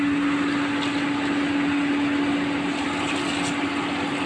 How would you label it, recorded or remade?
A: recorded